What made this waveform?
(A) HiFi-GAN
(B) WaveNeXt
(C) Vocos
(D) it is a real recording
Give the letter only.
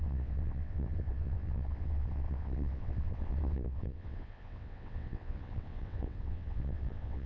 B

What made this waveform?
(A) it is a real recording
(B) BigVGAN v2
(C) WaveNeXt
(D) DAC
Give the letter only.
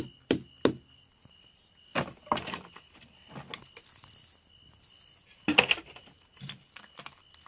A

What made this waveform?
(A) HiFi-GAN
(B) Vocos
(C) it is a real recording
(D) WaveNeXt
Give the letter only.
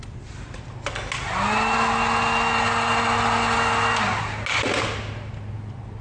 C